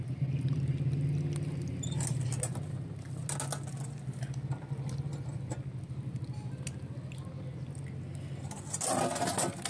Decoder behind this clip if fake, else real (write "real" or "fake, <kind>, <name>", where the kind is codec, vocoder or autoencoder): real